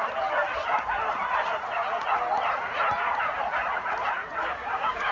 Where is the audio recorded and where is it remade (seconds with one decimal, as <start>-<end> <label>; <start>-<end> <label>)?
0.0-4.4 recorded; 4.4-5.1 remade